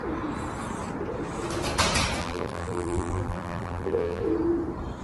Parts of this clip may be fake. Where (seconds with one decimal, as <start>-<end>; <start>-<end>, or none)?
2.2-4.2